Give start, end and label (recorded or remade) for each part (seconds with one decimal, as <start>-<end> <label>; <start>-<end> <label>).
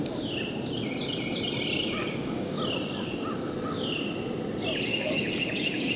0.0-2.0 recorded; 2.0-2.6 remade; 2.6-4.9 recorded; 4.9-6.0 remade